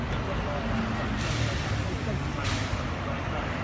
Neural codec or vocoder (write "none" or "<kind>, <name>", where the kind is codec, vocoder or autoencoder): none